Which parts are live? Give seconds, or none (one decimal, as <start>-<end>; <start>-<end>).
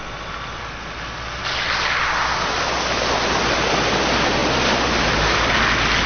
0.0-6.1